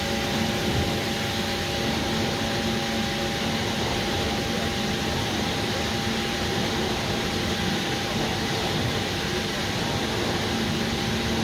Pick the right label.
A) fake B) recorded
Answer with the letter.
B